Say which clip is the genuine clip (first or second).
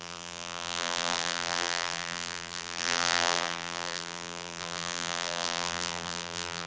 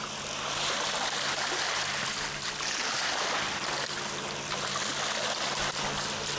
second